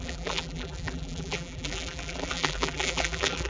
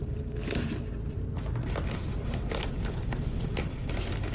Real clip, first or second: second